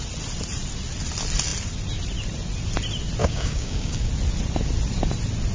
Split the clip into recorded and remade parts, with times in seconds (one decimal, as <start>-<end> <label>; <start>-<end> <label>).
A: 0.0-3.2 recorded; 3.2-4.1 remade; 4.1-5.5 recorded